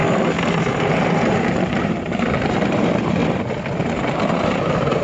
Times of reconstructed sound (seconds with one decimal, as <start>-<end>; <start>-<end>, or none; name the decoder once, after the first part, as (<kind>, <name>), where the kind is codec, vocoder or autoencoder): 0.9-3.2 (vocoder, BigVGAN v2); 3.9-5.0